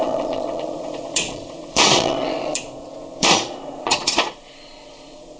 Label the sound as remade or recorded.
remade